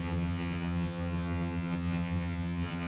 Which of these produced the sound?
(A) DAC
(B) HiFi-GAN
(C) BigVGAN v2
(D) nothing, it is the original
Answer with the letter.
B